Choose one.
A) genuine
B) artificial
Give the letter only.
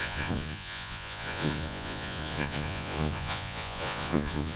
B